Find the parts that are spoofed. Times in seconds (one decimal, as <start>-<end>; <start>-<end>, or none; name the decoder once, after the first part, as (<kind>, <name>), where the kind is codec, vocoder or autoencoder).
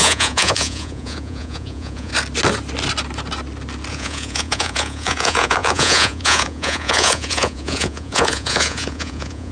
0.0-2.1 (vocoder, Vocos); 3.9-9.5